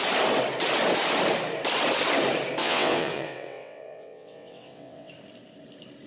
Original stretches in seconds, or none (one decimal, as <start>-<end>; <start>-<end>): 0.0-2.6; 5.1-6.1